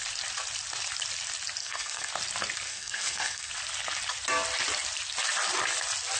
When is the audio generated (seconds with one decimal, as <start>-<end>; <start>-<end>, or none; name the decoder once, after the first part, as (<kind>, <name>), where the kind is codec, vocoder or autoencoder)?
1.6-2.1 (codec, SNAC); 2.7-3.5